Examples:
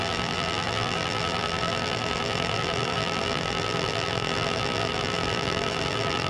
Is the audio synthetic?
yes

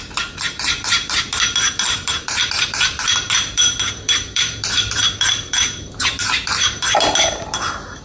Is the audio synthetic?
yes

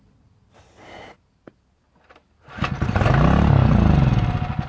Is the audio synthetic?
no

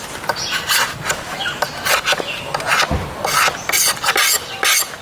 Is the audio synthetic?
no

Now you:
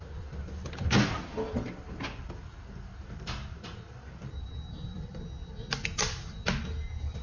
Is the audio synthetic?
no